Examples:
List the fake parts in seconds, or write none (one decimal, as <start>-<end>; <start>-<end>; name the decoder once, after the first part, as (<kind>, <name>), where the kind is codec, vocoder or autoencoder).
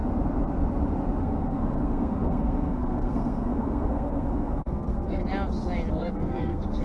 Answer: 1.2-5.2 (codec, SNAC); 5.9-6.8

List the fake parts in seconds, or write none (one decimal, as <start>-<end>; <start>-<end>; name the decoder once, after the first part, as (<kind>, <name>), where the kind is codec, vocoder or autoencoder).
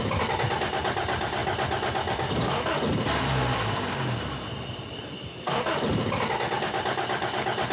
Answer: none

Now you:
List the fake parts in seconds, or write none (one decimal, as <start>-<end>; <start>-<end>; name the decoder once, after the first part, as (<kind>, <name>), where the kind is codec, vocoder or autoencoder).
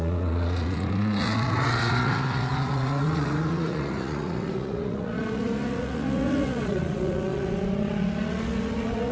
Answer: 0.0-9.1 (vocoder, Vocos)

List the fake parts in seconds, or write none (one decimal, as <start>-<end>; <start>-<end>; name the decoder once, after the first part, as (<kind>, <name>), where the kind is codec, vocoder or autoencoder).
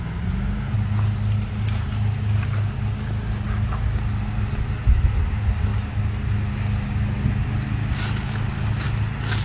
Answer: none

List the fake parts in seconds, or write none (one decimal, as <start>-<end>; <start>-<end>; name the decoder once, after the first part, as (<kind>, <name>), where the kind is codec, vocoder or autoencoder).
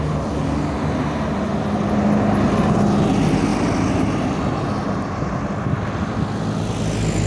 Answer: none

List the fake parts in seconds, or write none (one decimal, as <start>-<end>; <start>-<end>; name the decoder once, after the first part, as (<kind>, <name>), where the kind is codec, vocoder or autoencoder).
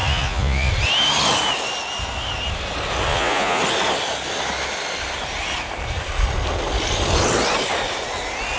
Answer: 0.0-0.7 (vocoder, Vocos); 3.1-3.6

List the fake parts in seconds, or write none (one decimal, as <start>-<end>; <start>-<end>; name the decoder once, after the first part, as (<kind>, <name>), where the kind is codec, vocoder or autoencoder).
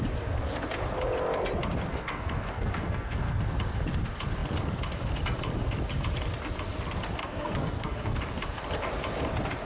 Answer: 1.9-3.4 (codec, SNAC); 7.2-8.2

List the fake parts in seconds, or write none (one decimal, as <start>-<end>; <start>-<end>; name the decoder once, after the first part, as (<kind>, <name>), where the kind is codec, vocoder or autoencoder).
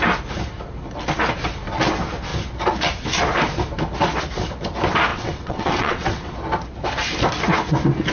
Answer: 5.1-6.3 (vocoder, WaveNeXt)